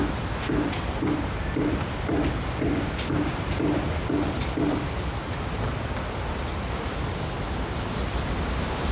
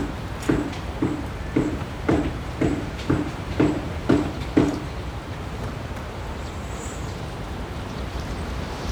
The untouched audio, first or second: first